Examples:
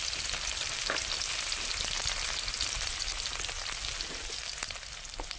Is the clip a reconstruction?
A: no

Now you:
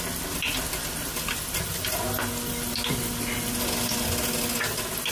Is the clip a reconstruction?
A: no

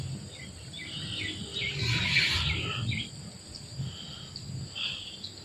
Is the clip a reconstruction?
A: no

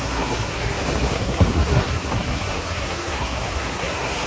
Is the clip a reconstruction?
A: yes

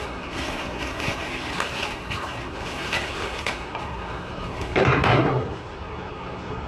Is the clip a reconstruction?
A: yes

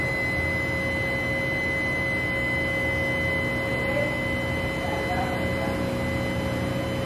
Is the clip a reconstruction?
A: no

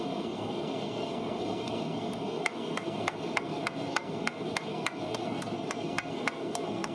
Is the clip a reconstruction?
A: yes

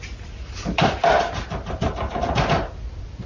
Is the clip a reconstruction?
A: no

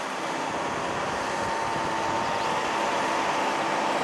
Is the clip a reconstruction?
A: no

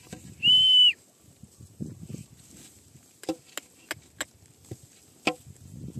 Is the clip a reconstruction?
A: no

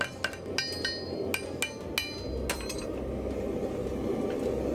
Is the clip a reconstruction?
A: no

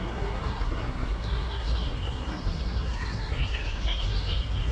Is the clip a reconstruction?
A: yes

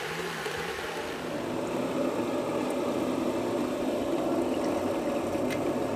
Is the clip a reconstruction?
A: no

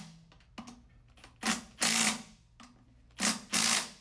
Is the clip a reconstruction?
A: no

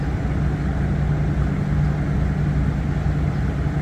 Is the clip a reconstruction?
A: no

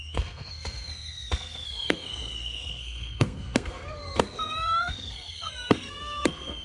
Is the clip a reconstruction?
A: yes